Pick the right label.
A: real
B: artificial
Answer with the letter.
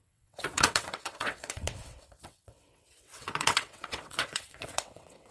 B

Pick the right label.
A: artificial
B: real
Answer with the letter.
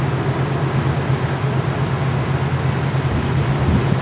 B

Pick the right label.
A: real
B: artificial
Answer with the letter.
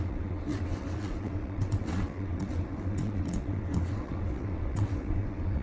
B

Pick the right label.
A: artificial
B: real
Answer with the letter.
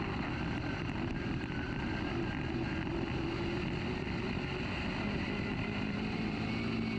B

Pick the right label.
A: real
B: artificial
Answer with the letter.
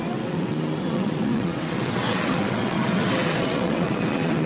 B